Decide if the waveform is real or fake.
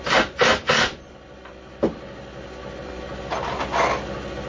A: real